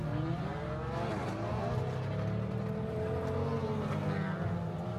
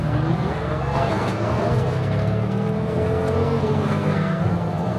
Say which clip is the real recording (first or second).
first